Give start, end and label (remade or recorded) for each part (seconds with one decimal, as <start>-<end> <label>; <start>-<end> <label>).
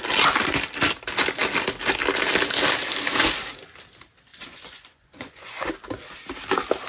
0.0-4.3 recorded; 4.3-5.7 remade; 5.7-6.9 recorded